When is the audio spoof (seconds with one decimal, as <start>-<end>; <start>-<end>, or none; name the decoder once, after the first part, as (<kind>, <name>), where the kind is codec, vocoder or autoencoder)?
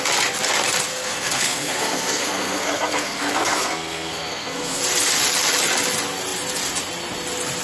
0.9-4.8 (codec, SNAC)